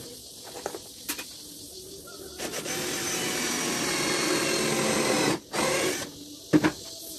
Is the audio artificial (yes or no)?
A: no